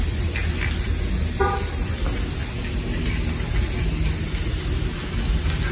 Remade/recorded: recorded